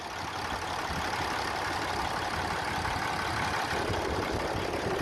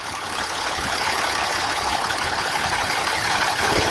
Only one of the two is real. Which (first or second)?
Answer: first